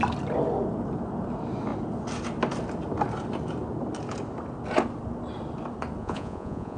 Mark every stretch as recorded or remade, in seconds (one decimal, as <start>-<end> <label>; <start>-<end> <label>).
0.0-6.0 recorded; 6.0-6.8 remade